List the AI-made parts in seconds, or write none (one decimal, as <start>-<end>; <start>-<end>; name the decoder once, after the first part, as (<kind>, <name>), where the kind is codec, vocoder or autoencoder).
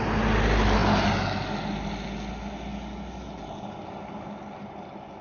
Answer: none